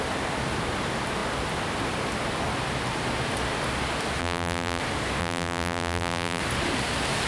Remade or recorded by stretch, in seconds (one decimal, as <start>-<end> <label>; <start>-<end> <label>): 0.0-4.2 recorded; 4.2-4.8 remade; 4.8-5.2 recorded; 5.2-6.4 remade; 6.4-7.3 recorded